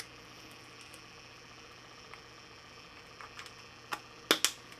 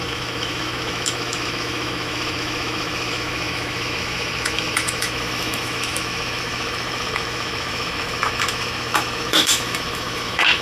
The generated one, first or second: second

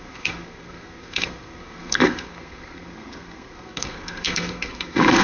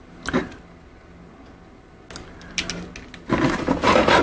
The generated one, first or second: first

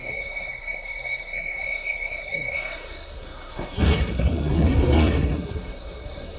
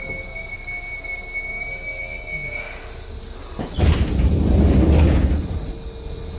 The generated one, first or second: first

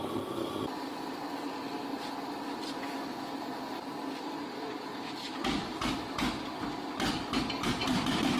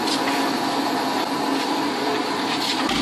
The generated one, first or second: first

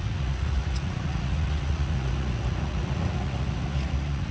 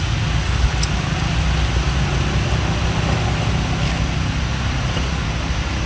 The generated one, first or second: first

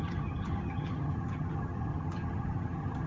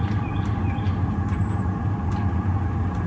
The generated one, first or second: first